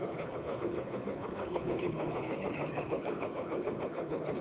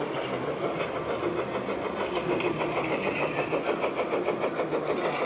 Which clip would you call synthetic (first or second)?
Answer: first